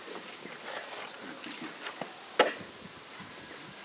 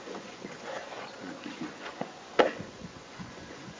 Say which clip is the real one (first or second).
first